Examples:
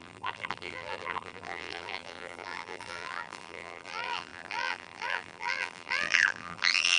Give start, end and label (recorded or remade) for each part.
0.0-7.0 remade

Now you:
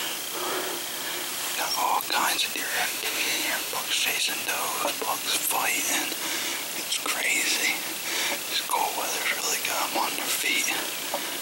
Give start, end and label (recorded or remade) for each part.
0.0-2.7 recorded; 2.7-3.8 remade; 3.8-11.4 recorded

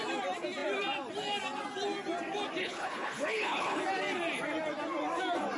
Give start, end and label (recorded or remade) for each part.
0.0-2.6 recorded; 2.6-3.8 remade; 3.8-5.6 recorded

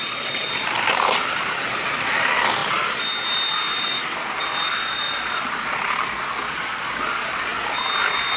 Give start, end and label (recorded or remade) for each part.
0.0-8.4 recorded